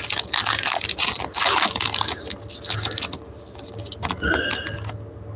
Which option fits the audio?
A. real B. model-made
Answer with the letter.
A